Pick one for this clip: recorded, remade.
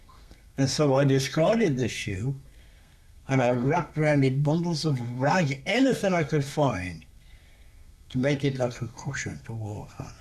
remade